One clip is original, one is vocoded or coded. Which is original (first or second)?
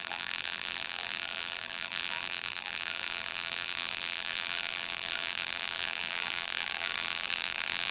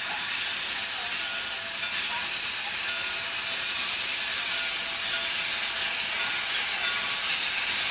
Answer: second